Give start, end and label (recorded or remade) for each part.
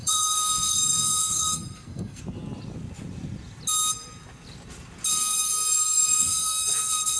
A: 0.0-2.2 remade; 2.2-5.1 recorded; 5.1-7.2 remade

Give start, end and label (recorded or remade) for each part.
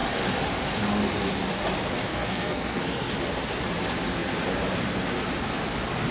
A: 0.0-2.1 recorded; 2.1-3.1 remade; 3.1-6.1 recorded